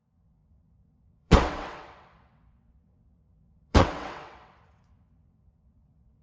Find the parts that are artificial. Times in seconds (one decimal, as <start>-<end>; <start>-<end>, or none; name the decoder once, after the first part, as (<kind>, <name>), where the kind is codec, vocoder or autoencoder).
0.0-6.2 (vocoder, WaveNeXt)